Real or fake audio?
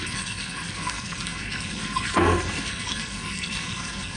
fake